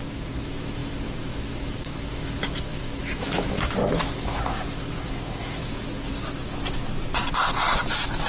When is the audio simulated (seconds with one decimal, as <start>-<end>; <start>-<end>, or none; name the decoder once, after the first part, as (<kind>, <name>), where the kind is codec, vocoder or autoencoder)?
0.0-6.1 (autoencoder, DAC-VAE)